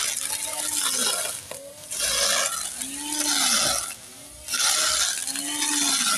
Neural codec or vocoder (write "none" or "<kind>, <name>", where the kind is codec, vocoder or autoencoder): none